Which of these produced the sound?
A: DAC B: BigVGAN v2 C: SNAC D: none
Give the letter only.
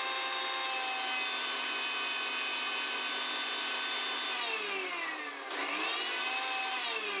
D